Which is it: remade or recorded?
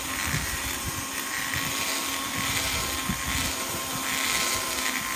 recorded